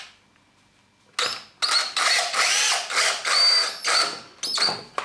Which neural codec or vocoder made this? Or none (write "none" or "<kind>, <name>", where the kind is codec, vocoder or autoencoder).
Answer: none